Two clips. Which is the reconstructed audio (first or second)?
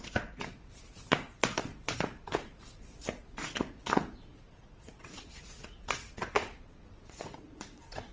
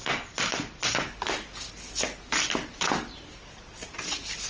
first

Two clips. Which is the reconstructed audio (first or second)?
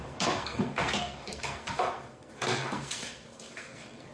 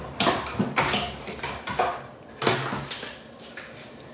first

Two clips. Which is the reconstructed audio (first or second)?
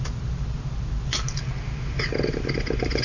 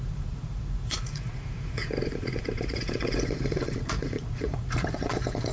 second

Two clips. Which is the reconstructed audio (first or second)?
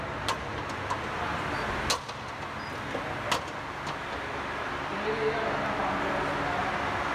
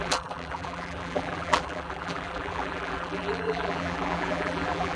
second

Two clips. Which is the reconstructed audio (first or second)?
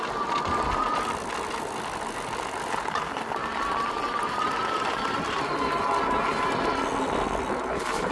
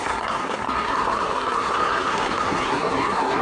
second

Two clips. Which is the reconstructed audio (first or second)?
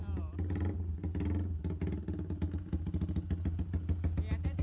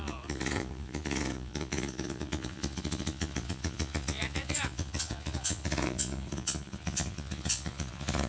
second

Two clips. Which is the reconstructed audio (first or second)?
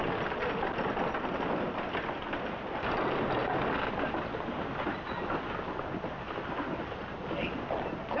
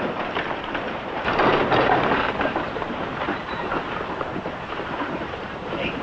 second